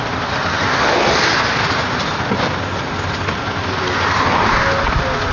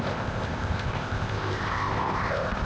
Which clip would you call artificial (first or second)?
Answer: second